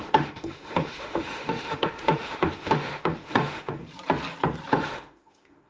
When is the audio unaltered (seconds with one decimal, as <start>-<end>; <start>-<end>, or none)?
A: 3.8-4.7

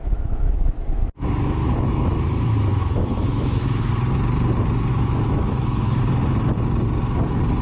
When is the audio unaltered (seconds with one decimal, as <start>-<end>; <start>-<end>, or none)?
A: 3.9-4.9; 6.0-7.6